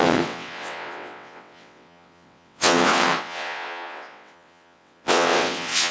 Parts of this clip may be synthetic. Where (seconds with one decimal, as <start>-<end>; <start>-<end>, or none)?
0.0-5.9